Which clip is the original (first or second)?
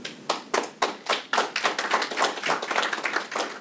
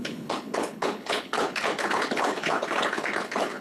first